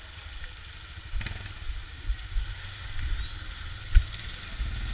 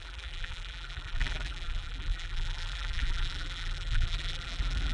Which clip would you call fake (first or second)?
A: second